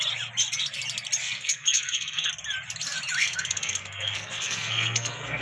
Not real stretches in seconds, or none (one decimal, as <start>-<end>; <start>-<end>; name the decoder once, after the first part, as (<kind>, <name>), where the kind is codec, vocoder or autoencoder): 1.2-2.3 (codec, SNAC); 3.2-5.4